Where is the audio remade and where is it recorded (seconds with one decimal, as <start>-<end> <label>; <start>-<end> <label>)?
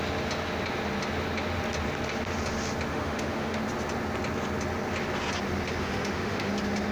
0.0-2.9 recorded; 2.9-3.6 remade; 3.6-5.8 recorded; 5.8-6.5 remade; 6.5-6.9 recorded